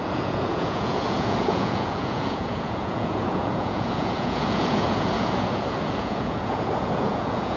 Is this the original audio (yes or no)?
no